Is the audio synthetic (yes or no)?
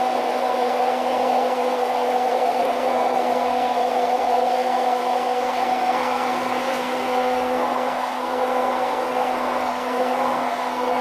yes